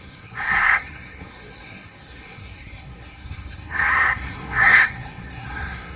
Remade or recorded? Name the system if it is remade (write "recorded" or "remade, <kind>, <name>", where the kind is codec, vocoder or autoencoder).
remade, codec, SNAC